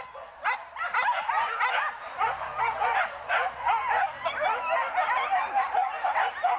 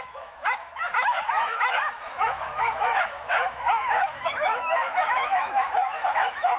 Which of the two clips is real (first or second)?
first